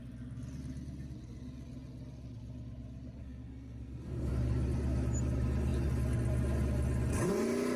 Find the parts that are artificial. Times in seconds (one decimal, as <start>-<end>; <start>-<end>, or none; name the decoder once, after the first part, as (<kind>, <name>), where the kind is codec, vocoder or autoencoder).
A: 3.2-4.3 (codec, SNAC)